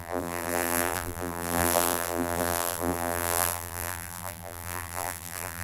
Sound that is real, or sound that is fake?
fake